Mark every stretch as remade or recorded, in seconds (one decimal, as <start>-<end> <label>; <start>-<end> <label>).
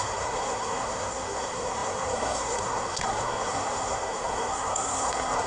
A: 0.0-5.5 remade